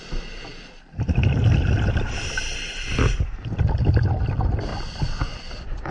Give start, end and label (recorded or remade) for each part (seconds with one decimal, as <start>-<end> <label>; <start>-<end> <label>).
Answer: 0.0-5.9 recorded